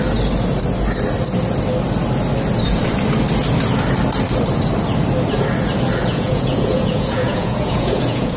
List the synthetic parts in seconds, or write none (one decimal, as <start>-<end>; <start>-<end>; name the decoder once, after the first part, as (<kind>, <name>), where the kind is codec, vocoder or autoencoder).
6.0-8.4 (vocoder, Vocos)